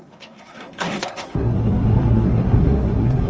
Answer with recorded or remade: remade